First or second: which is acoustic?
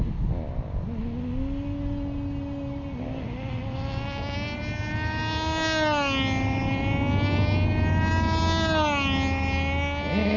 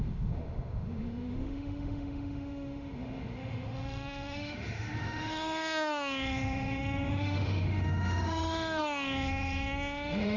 first